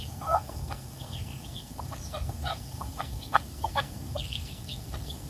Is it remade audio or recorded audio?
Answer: remade